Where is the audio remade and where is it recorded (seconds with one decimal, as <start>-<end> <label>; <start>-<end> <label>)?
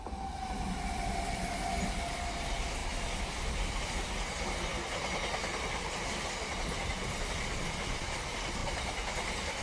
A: 0.0-9.6 recorded